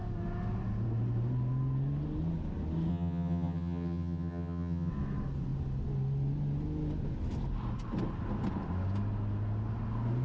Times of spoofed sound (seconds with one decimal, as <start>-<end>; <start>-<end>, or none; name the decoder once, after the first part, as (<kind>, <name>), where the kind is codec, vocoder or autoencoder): 2.9-4.9 (vocoder, HiFi-GAN)